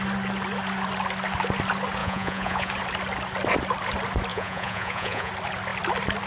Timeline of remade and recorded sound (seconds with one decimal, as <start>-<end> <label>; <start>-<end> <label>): 0.0-2.0 recorded; 2.0-2.7 remade; 2.7-4.3 recorded; 4.3-5.3 remade; 5.3-6.3 recorded